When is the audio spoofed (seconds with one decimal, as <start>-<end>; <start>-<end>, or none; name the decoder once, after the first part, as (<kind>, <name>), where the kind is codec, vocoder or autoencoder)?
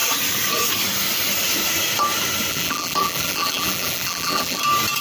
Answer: 2.5-4.6 (vocoder, BigVGAN v2)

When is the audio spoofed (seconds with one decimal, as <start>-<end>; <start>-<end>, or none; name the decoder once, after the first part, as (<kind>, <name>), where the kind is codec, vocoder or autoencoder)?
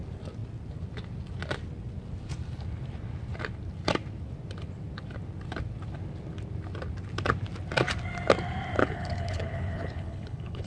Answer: 8.8-10.7 (codec, HILCodec)